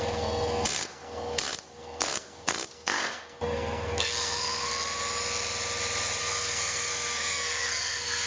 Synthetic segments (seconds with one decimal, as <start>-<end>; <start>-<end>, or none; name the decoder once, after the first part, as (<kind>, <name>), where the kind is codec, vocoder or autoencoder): 0.0-4.7 (codec, SNAC); 6.2-8.3

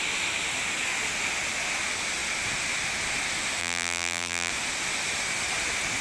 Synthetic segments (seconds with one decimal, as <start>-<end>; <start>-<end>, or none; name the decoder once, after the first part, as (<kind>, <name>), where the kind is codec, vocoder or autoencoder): 3.6-4.5 (vocoder, BigVGAN v2)

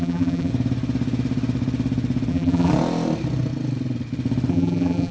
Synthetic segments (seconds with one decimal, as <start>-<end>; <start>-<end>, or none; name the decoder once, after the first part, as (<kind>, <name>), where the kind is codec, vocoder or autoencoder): 0.0-0.5 (vocoder, BigVGAN v2); 2.3-2.7; 4.5-5.1

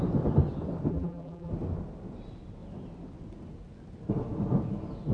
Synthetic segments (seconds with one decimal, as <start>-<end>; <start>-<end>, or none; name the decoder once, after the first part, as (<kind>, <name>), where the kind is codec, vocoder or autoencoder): 0.9-1.5 (vocoder, BigVGAN v2)

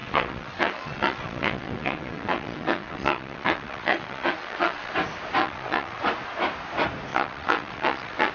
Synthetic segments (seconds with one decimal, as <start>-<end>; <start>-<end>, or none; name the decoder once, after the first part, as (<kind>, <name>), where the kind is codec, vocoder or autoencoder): 0.0-4.9 (vocoder, WaveNeXt); 5.4-6.0; 7.1-8.3

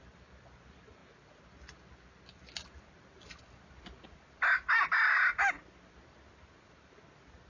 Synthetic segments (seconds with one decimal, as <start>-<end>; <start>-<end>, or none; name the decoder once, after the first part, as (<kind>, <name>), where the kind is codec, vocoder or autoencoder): none